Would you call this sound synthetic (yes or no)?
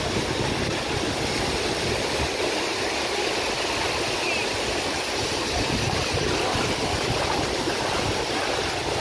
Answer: no